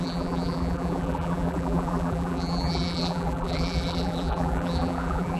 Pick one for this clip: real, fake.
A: fake